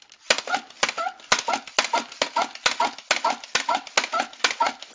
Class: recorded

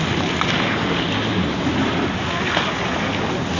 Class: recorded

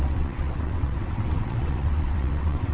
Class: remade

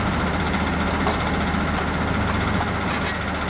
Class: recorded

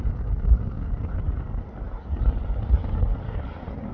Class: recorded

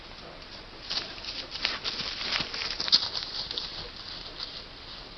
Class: recorded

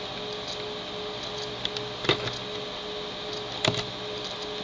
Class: recorded